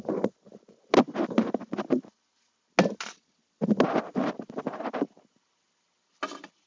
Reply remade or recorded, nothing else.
recorded